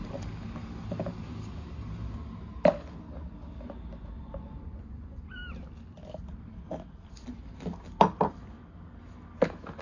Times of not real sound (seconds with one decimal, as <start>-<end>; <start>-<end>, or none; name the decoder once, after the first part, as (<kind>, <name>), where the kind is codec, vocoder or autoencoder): 4.2-5.4 (vocoder, Vocos)